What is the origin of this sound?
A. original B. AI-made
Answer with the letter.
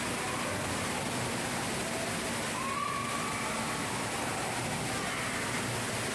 A